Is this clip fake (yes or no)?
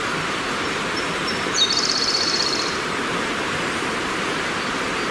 yes